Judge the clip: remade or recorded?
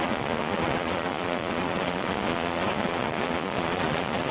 remade